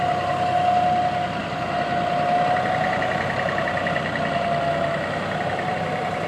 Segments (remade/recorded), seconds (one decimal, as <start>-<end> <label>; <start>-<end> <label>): 0.0-6.3 recorded